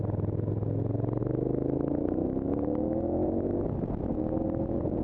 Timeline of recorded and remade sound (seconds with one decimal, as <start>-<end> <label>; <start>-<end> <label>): 0.0-1.2 recorded; 1.2-4.2 remade; 4.2-5.0 recorded